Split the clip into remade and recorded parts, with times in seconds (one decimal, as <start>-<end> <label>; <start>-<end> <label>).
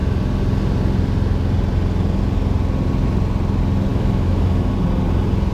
0.0-3.9 recorded; 3.9-4.7 remade; 4.7-5.5 recorded